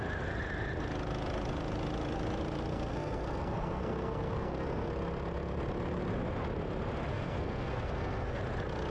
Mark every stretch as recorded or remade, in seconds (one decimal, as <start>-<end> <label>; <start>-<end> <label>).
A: 0.0-2.7 recorded; 2.7-4.9 remade; 4.9-7.1 recorded; 7.1-8.4 remade; 8.4-8.9 recorded

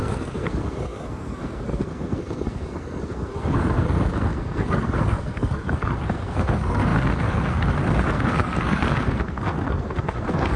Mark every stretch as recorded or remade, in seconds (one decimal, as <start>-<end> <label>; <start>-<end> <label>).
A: 0.0-10.6 remade

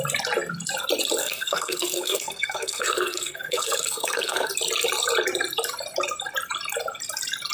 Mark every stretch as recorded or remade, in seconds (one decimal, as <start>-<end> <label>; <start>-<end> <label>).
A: 0.0-1.2 recorded; 1.2-4.5 remade; 4.5-7.5 recorded

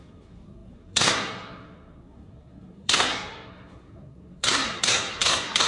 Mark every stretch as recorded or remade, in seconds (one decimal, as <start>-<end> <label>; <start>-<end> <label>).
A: 0.0-5.7 remade

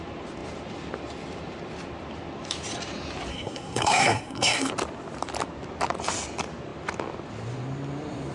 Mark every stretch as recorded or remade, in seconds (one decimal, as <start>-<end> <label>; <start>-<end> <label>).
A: 0.0-3.3 recorded; 3.3-4.7 remade; 4.7-8.3 recorded